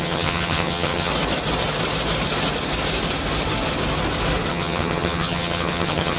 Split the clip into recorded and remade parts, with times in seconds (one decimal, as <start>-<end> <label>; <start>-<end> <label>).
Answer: 0.0-1.1 remade; 1.1-4.5 recorded; 4.5-6.2 remade